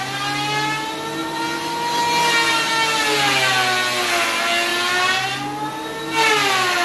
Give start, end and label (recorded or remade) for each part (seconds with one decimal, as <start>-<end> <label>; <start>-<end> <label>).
0.0-1.2 recorded; 1.2-2.7 remade; 2.7-6.8 recorded